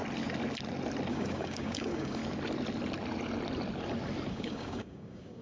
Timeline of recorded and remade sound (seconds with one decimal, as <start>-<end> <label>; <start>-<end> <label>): 0.0-1.1 recorded; 1.1-2.2 remade; 2.2-4.3 recorded; 4.3-5.4 remade